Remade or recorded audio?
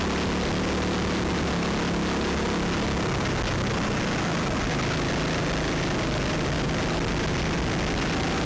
recorded